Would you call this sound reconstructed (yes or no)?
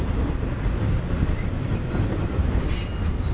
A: no